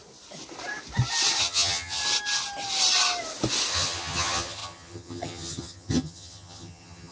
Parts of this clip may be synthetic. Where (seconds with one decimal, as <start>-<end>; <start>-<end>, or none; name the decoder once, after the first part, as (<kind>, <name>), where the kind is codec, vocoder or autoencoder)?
1.4-2.0 (vocoder, HiFi-GAN); 3.7-7.1